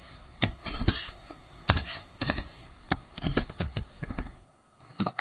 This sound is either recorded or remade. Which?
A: remade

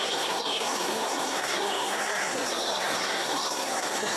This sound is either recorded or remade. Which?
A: remade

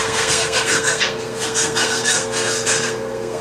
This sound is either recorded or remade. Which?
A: remade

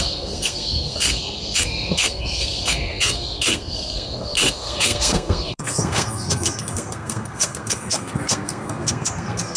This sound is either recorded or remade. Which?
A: remade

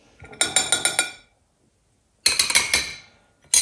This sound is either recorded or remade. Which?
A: recorded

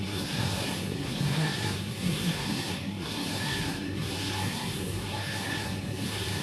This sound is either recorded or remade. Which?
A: remade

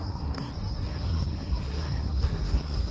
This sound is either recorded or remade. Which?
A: remade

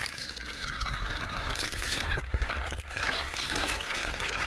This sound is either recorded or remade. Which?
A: remade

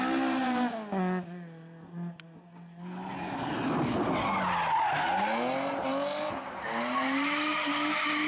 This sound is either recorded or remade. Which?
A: recorded